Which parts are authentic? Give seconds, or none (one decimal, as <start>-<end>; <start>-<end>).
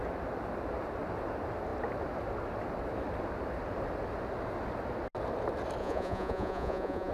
0.0-5.8